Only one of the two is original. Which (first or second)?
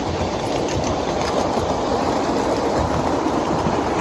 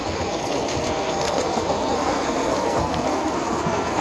first